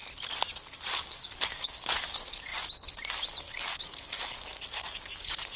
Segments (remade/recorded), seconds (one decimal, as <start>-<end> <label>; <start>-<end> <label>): 0.0-1.1 recorded; 1.1-2.5 remade; 2.5-3.4 recorded; 3.4-5.6 remade